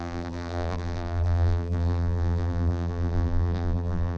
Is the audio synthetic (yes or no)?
yes